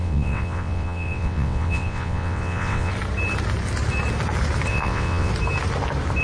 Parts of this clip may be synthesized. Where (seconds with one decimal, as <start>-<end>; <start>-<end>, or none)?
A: 0.0-2.9; 4.7-5.3